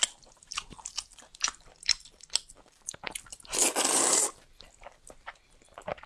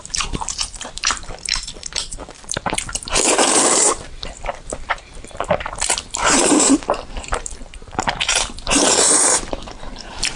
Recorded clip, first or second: first